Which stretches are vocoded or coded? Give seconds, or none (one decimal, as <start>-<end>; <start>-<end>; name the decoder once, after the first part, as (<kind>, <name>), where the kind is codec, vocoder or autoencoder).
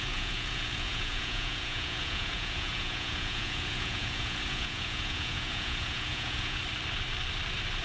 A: 0.0-6.6 (vocoder, Vocos)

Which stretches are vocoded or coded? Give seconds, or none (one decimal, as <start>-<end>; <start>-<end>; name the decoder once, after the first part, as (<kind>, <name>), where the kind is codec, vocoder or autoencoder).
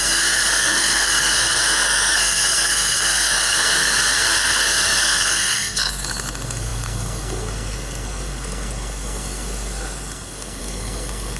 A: 0.0-11.4 (codec, SNAC)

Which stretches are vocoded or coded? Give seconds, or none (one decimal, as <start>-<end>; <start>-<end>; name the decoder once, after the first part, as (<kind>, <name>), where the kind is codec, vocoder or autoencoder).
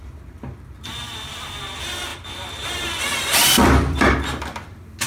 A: 2.1-3.0 (vocoder, BigVGAN v2); 3.4-4.1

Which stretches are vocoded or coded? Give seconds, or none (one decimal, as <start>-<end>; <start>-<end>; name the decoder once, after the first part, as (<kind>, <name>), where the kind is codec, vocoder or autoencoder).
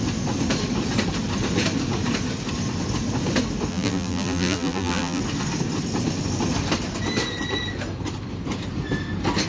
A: 3.7-5.2 (vocoder, BigVGAN v2)